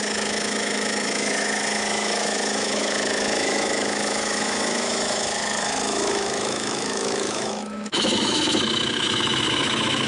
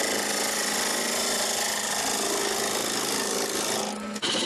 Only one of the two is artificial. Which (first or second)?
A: first